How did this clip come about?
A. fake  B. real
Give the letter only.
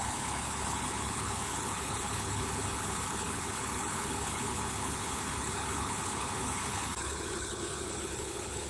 A